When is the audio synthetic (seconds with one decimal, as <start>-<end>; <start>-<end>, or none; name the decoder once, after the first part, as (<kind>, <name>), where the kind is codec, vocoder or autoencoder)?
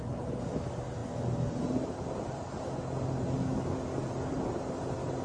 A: none